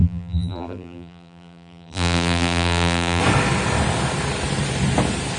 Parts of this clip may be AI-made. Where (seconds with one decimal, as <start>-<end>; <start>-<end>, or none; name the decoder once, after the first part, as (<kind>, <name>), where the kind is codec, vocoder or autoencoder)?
0.0-3.2 (vocoder, BigVGAN v2)